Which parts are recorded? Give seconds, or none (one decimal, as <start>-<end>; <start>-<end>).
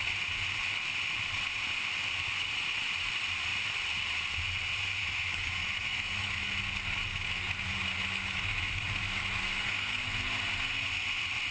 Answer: 0.0-5.0; 6.4-7.1; 10.1-11.5